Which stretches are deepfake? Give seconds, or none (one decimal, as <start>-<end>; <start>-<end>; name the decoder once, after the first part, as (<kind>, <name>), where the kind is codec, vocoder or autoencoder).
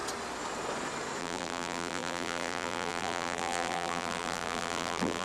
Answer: 1.2-5.2 (vocoder, BigVGAN v2)